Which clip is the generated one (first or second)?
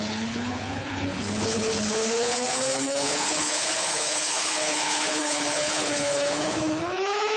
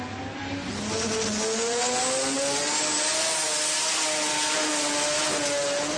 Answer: first